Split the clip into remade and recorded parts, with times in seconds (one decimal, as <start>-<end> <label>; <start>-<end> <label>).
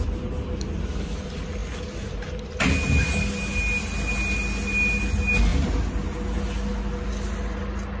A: 0.0-8.0 recorded